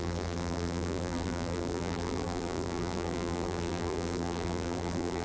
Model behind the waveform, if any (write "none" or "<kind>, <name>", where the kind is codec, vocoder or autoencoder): vocoder, BigVGAN v2